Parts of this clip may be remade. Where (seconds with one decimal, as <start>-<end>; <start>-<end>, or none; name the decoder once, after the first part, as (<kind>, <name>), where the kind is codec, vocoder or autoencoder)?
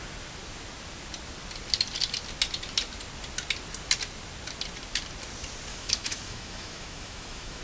5.7-7.6 (autoencoder, DAC-VAE)